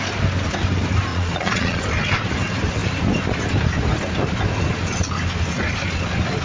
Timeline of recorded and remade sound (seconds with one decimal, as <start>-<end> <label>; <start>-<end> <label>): 0.0-1.1 recorded; 1.1-1.8 remade; 1.8-6.4 recorded

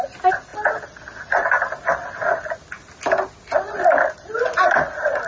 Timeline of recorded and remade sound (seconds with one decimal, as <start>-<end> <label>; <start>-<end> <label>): 0.0-5.3 recorded

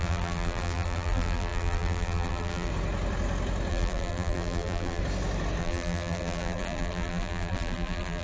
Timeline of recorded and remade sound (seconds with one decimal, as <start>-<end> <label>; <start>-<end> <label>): 0.0-2.7 remade; 2.7-3.7 recorded; 3.7-5.0 remade; 5.0-5.6 recorded; 5.6-8.2 remade

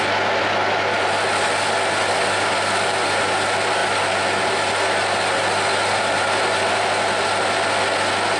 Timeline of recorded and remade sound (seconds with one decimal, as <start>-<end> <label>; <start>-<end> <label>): 0.0-8.4 recorded

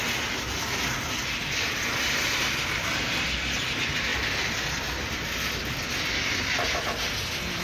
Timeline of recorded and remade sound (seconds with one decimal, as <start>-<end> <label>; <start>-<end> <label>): 0.0-7.6 recorded